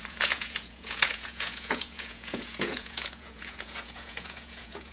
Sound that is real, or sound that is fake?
fake